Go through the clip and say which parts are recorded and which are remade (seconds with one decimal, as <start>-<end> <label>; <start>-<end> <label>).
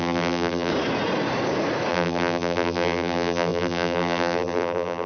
0.0-0.7 remade; 0.7-1.9 recorded; 1.9-5.1 remade